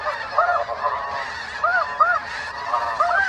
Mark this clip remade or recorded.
remade